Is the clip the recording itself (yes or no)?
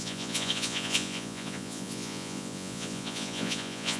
no